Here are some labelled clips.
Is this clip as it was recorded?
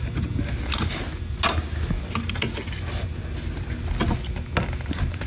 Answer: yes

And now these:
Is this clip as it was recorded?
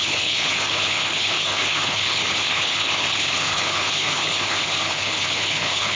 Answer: no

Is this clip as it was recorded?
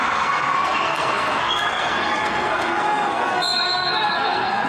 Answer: no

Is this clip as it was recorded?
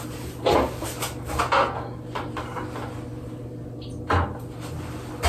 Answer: yes